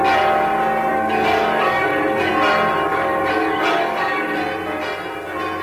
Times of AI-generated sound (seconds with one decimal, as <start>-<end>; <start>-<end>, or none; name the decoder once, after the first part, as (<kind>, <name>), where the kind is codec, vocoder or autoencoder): 0.9-2.3 (codec, DAC); 2.9-4.4